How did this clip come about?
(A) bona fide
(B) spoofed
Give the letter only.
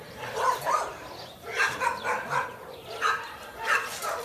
B